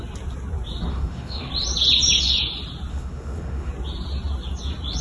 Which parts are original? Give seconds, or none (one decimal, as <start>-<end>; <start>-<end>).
0.0-0.9; 1.5-2.9; 3.7-5.0